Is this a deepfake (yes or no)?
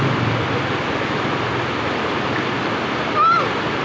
no